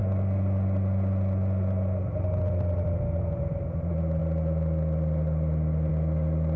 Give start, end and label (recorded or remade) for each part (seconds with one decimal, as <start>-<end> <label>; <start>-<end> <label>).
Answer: 0.0-6.6 recorded